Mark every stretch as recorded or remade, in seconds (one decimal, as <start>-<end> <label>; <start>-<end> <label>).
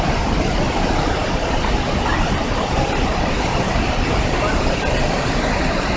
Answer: 0.0-6.0 recorded